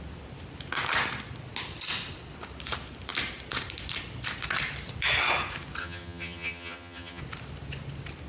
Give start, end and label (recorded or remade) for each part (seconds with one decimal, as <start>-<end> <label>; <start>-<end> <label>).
0.0-5.8 recorded; 5.8-7.2 remade; 7.2-8.3 recorded